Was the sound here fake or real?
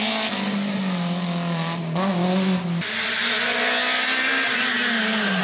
real